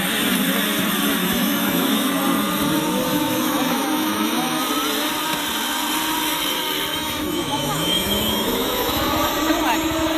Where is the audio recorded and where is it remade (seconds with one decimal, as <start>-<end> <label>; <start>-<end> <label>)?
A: 0.0-1.2 recorded; 1.2-2.0 remade; 2.0-3.1 recorded; 3.1-4.6 remade; 4.6-6.9 recorded; 6.9-9.0 remade; 9.0-10.2 recorded